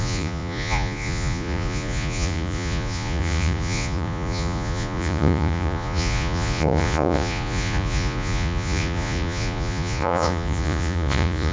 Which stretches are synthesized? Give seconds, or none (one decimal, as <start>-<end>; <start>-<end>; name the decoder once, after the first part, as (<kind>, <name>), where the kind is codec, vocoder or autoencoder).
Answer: 0.0-11.5 (vocoder, Vocos)